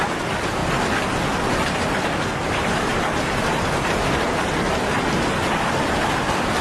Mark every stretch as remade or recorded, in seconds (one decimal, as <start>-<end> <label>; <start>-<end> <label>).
0.0-2.9 remade; 2.9-5.5 recorded; 5.5-6.6 remade